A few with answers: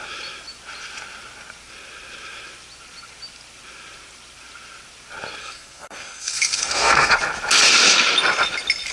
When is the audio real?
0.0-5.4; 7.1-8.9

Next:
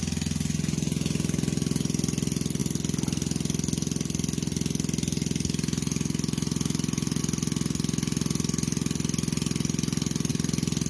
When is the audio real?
0.0-10.9

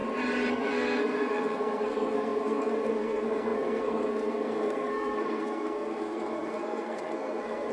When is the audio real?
0.0-0.5